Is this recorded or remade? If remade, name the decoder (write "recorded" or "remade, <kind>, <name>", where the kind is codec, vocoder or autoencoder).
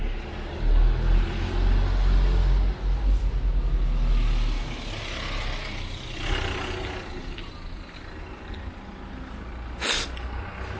recorded